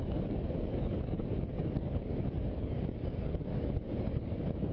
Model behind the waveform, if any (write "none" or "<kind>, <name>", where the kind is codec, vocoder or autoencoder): codec, DAC